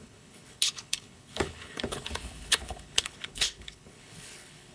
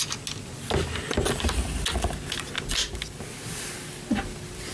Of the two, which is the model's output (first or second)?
first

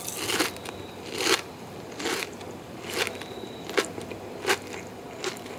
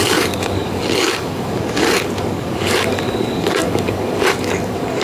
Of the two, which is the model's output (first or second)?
second